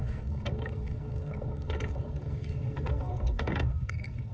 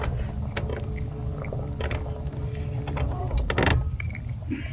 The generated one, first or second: first